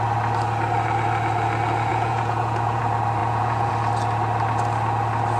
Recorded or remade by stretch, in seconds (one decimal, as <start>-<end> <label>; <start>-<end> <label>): 0.0-1.9 recorded; 1.9-2.8 remade; 2.8-3.2 recorded; 3.2-3.7 remade; 3.7-5.4 recorded